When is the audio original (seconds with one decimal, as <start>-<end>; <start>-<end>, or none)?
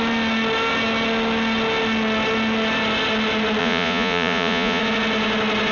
0.0-3.6; 4.8-5.7